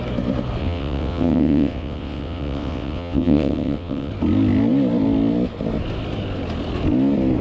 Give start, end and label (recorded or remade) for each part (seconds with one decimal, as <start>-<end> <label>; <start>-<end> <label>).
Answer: 0.0-0.6 recorded; 0.6-4.1 remade; 4.1-7.4 recorded